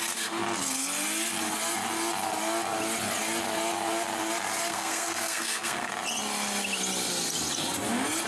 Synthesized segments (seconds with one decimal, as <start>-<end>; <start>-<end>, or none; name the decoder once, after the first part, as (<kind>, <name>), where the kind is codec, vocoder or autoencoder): 4.7-5.9 (codec, SNAC)